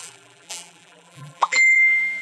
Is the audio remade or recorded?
remade